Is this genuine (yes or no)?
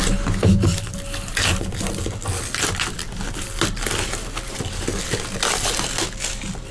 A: yes